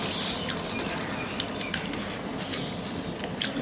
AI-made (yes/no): no